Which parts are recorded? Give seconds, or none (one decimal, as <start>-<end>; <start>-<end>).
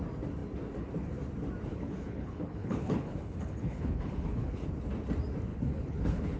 0.0-1.7; 4.7-5.5